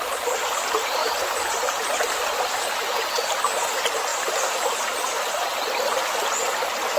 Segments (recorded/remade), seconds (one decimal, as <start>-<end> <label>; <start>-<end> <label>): 0.0-1.0 recorded; 1.0-3.4 remade; 3.4-4.1 recorded; 4.1-5.3 remade; 5.3-7.0 recorded